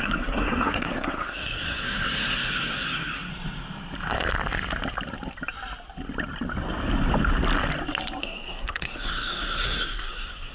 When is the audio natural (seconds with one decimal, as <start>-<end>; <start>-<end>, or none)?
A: 3.3-8.2